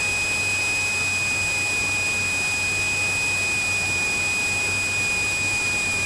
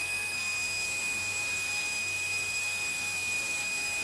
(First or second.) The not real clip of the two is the second